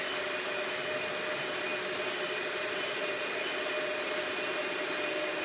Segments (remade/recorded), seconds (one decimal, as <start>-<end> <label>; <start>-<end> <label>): 0.0-5.4 recorded